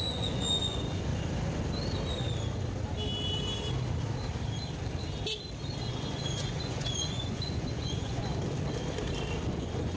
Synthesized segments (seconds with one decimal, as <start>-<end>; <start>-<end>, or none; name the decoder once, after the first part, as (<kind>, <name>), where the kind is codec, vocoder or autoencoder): 0.0-1.1 (vocoder, Vocos); 5.9-8.3; 9.5-10.0